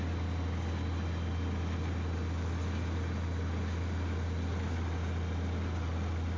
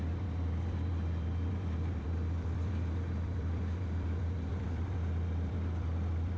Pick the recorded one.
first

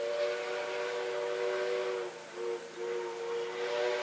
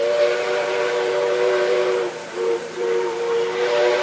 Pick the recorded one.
first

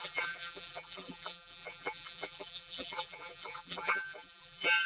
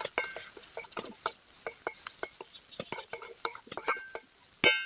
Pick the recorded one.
second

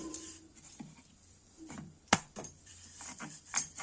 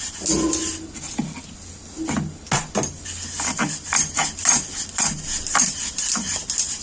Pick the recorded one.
second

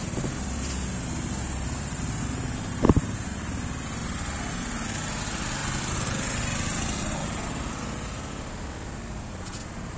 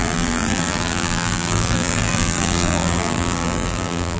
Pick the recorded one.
first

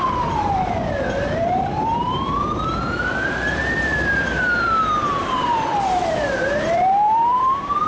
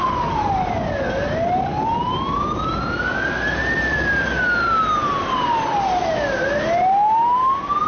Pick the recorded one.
second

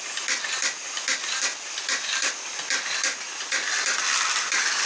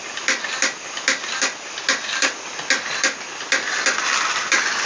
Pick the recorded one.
second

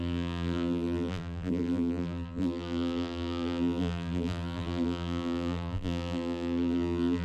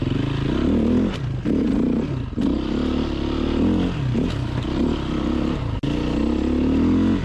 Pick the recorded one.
second